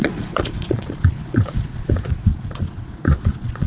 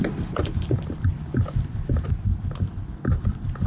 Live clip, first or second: second